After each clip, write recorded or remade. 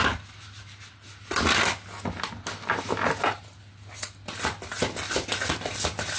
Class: recorded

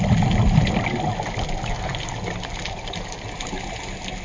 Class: recorded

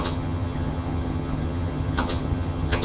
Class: remade